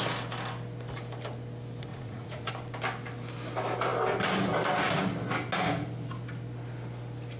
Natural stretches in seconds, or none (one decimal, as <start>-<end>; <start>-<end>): 0.0-1.9; 2.5-7.4